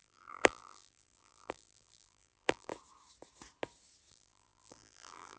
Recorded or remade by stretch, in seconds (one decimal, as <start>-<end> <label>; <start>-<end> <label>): 0.0-2.7 remade; 2.7-4.1 recorded; 4.1-5.4 remade